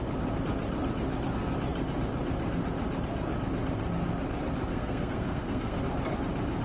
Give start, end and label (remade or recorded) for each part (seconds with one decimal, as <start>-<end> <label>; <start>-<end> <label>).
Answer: 0.0-4.7 recorded; 4.7-5.8 remade; 5.8-6.6 recorded